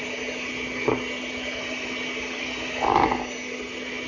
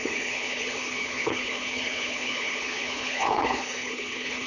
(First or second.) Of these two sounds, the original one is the first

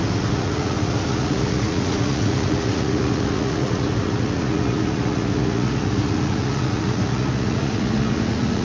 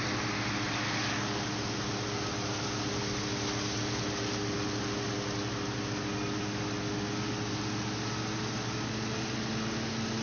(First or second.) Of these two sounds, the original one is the second